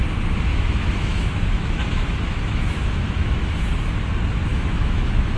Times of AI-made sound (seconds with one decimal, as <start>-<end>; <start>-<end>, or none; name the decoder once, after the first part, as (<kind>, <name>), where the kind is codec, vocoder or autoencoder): 0.5-3.7 (autoencoder, DAC-VAE); 4.5-5.4